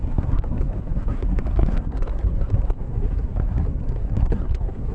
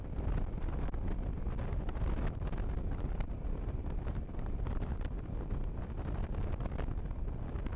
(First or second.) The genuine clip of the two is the second